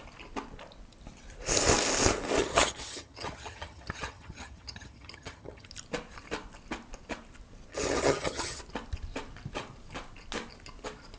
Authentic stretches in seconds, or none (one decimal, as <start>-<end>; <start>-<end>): 0.0-2.4; 5.7-7.7; 8.6-11.2